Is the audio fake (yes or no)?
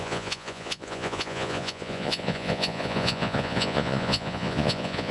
yes